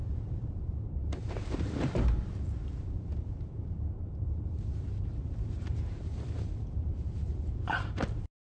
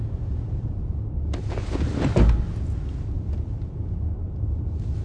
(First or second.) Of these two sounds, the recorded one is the second